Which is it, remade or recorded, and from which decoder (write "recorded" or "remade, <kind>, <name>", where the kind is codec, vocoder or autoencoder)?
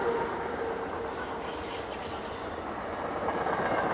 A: recorded